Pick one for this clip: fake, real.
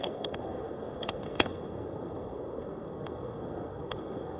fake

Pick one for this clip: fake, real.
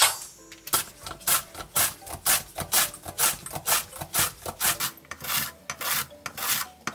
real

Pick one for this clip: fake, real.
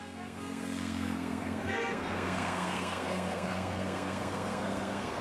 fake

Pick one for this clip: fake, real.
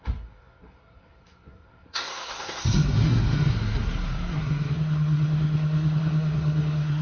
fake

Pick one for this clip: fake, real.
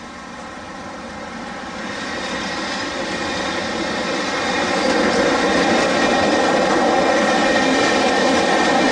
real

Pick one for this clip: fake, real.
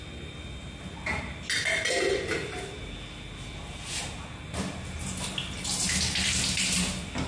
real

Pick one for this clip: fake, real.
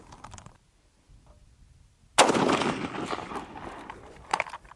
real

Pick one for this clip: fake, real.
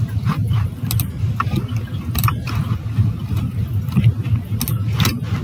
real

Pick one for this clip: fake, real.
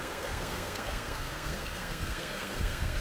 fake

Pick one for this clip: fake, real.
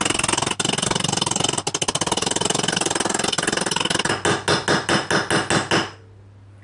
real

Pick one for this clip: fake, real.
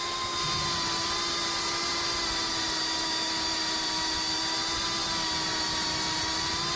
real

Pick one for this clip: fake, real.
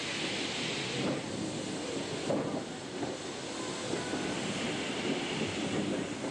real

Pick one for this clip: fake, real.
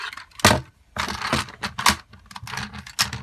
real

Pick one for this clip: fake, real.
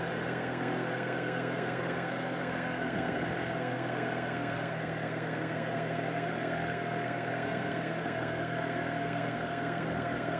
fake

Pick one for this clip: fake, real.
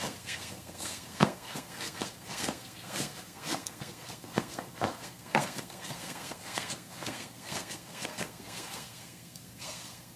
fake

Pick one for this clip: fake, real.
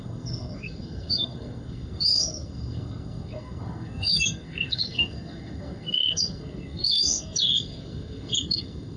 fake